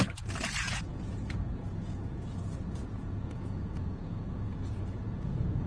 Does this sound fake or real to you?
fake